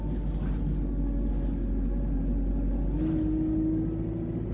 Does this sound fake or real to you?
real